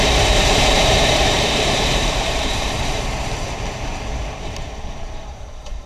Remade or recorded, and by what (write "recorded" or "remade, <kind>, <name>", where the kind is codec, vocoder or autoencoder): remade, vocoder, BigVGAN v2